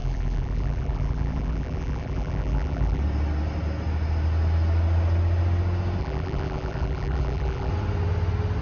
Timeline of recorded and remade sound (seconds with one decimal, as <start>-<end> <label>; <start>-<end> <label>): 0.0-3.0 remade; 3.0-6.0 recorded; 6.0-7.7 remade; 7.7-8.6 recorded